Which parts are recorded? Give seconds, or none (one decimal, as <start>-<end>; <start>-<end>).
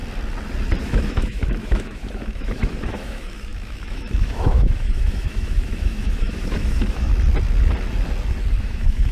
0.0-0.8; 7.1-8.6